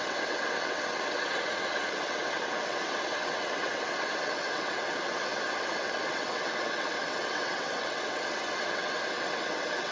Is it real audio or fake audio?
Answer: fake